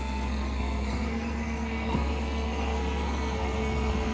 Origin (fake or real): fake